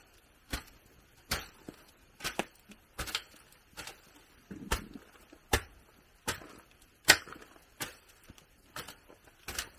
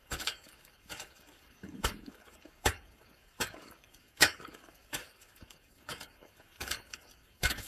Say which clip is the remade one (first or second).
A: second